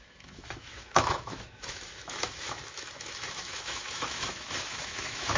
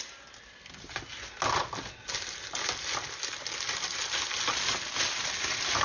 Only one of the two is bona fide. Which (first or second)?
second